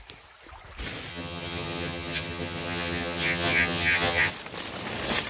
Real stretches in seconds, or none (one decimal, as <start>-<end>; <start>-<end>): 0.0-1.1; 4.3-5.3